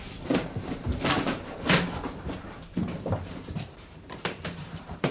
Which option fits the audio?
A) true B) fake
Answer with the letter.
B